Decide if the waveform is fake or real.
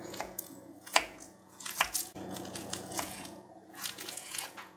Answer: fake